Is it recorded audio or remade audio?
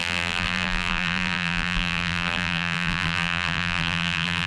remade